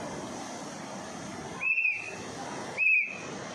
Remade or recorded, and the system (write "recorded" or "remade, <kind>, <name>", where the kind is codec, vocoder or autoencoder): recorded